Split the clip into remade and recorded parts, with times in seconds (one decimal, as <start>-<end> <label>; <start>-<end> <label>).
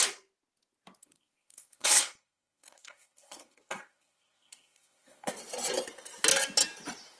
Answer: 0.0-1.0 recorded; 1.0-5.3 remade; 5.3-7.2 recorded